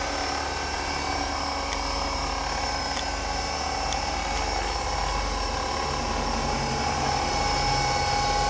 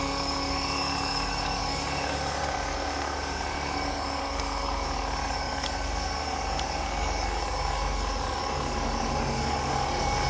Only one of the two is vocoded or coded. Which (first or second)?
second